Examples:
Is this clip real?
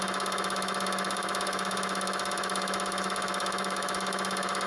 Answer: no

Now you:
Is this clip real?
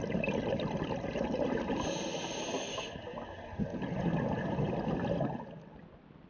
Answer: yes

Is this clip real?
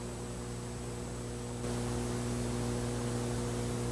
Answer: yes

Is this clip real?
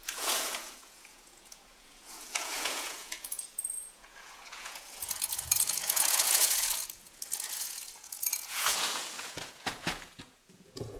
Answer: no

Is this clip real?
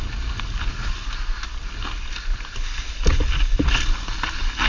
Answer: yes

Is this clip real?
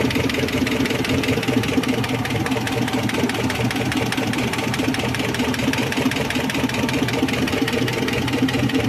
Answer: no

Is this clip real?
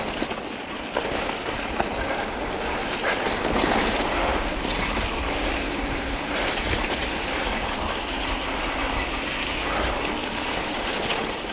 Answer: yes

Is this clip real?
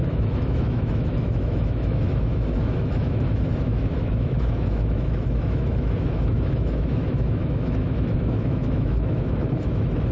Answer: no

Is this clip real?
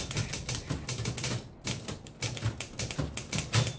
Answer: yes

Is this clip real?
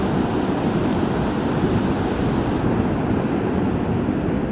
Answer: yes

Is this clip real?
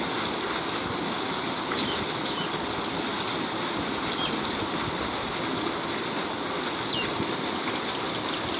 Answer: yes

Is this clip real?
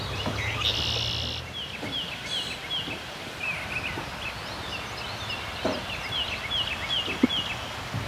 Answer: yes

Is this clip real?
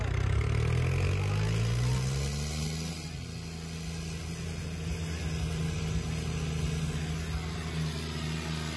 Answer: yes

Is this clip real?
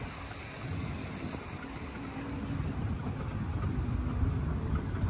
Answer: yes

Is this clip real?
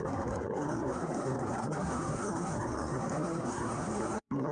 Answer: no